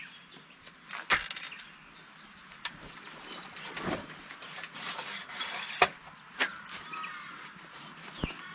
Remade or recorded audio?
recorded